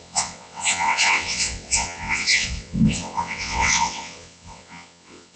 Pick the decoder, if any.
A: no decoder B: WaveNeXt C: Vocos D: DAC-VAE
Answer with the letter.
B